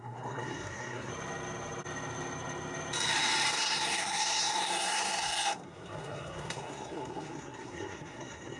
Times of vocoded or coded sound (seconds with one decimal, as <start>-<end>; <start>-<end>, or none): 0.0-1.1; 3.5-8.6